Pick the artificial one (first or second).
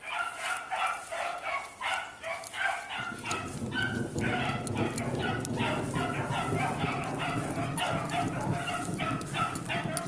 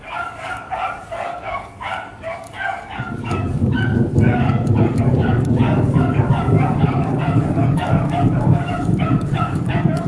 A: second